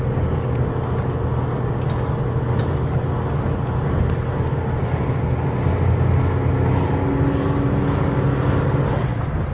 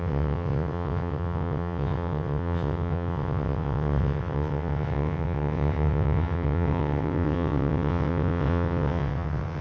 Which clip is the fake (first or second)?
second